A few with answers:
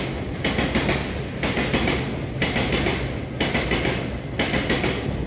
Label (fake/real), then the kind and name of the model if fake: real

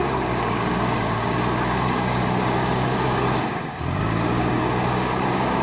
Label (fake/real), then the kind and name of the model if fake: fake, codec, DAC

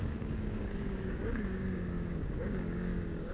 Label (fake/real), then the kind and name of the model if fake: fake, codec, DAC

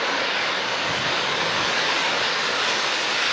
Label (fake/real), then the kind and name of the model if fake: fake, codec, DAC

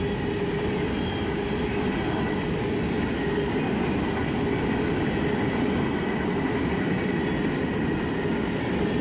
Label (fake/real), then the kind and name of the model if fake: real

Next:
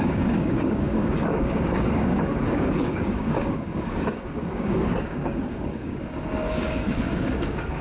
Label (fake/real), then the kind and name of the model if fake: fake, codec, DAC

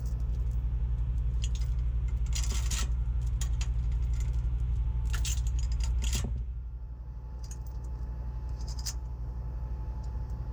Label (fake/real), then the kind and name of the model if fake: real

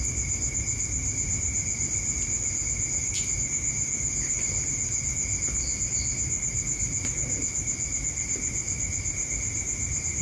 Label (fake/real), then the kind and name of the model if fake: real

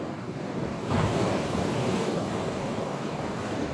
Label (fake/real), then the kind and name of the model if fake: fake, codec, DAC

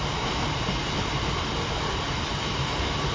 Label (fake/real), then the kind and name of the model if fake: real